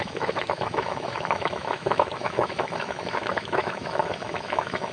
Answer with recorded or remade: remade